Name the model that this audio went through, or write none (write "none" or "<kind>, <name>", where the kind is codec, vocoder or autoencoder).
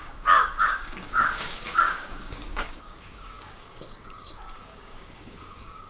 codec, DAC